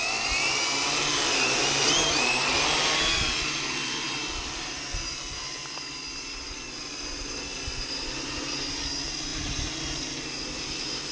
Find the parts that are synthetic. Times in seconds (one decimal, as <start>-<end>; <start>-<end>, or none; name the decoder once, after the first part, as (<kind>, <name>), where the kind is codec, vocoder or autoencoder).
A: none